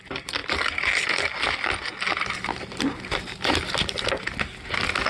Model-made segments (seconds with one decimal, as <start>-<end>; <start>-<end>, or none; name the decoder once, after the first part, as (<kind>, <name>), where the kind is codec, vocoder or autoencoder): none